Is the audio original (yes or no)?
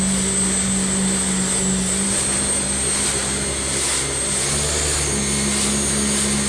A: yes